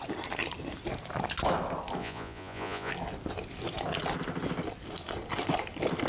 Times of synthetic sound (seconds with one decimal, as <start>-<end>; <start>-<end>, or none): 2.0-2.9